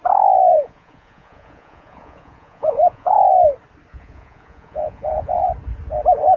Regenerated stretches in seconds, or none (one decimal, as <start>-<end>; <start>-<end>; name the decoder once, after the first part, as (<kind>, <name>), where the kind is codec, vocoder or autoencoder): 0.5-3.3 (vocoder, Vocos); 3.9-5.4